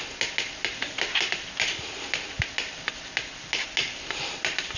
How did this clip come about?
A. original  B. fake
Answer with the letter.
A